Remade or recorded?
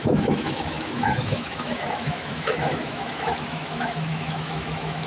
remade